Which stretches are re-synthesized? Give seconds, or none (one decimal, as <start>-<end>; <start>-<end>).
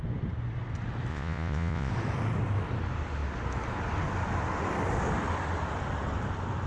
1.1-1.9